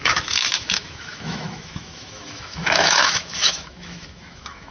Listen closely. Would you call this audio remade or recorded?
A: remade